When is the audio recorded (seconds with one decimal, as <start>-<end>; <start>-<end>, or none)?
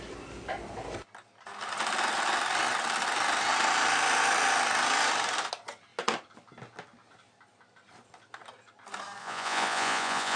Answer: 0.0-9.2